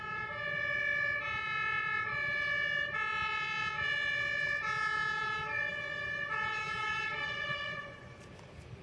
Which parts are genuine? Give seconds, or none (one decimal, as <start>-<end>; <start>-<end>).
0.0-7.2; 8.2-8.8